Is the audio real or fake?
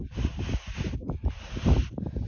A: real